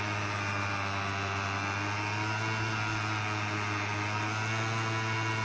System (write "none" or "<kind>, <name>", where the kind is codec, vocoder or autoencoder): none